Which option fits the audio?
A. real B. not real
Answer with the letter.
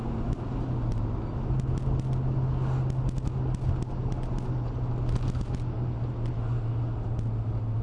A